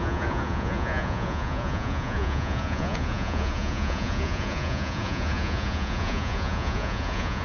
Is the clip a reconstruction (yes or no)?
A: yes